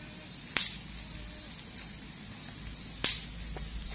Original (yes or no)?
yes